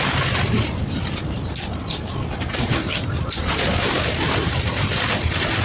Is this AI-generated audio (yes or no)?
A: no